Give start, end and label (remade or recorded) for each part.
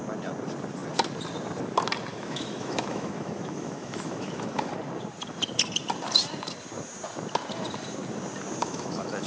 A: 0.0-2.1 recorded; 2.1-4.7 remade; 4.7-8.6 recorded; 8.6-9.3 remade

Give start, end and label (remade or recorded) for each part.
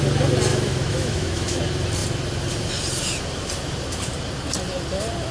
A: 0.0-0.5 recorded; 0.5-1.6 remade; 1.6-5.3 recorded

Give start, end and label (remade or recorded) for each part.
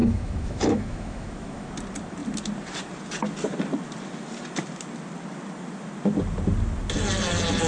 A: 0.0-1.7 remade; 1.7-7.7 recorded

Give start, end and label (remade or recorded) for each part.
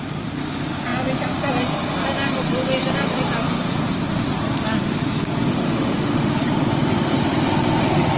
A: 0.0-5.5 recorded; 5.5-6.3 remade; 6.3-8.2 recorded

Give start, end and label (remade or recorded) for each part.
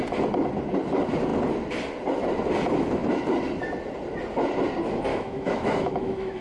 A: 0.0-5.1 recorded; 5.1-6.4 remade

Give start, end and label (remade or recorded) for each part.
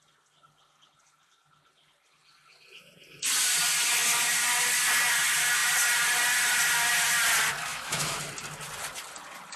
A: 0.0-7.7 recorded; 7.7-8.2 remade; 8.2-9.6 recorded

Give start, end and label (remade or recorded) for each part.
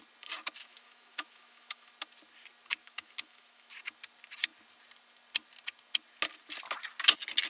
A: 0.0-0.6 recorded; 0.6-1.9 remade; 1.9-2.8 recorded; 2.8-3.7 remade; 3.7-7.5 recorded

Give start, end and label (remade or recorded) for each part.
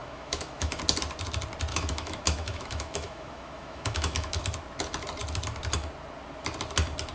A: 0.0-0.8 remade; 0.8-1.7 recorded; 1.7-4.4 remade; 4.4-7.1 recorded